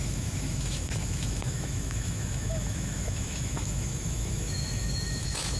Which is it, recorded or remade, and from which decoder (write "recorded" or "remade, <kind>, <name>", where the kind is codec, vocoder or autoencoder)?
remade, autoencoder, DAC-VAE